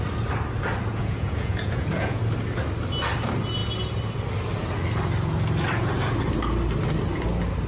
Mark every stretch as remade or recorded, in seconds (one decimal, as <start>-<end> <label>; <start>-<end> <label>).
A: 0.0-0.9 recorded; 0.9-2.2 remade; 2.2-7.7 recorded